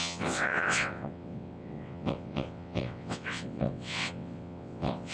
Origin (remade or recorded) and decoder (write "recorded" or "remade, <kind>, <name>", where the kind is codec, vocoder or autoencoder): remade, vocoder, WaveNeXt